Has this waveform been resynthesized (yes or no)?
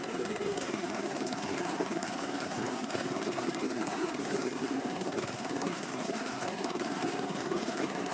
yes